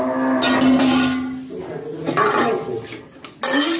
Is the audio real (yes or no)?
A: yes